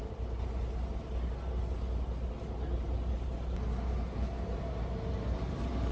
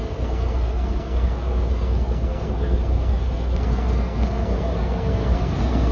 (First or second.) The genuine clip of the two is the first